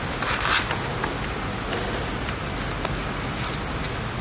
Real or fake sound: real